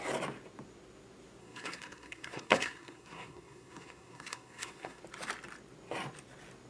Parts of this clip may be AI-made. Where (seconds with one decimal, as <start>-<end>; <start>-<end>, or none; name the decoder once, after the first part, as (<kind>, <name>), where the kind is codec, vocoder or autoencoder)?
1.4-5.0 (codec, SNAC)